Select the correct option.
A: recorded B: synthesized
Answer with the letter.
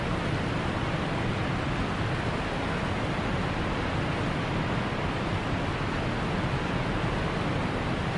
A